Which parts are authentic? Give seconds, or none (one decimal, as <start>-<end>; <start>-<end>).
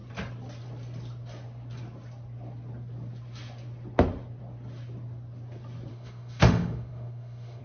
0.0-5.9